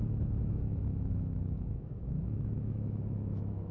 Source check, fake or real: fake